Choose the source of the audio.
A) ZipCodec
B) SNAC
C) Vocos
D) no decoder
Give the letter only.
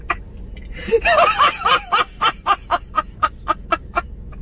D